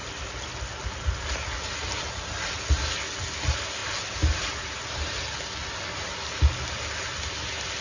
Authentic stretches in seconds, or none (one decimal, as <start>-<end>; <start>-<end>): 0.0-7.8